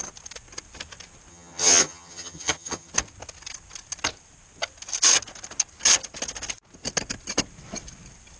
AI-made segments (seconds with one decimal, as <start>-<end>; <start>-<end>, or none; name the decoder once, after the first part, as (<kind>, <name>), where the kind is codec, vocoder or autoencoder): 1.3-2.9 (vocoder, HiFi-GAN)